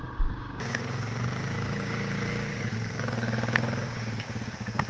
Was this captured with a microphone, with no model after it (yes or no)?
no